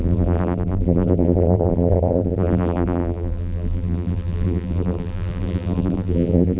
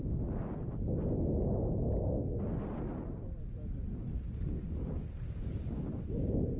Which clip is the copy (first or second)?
first